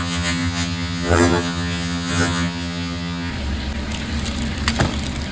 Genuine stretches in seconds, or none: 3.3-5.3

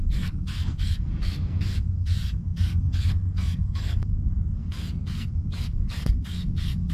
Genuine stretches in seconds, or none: none